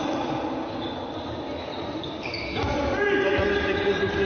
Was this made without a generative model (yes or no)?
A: yes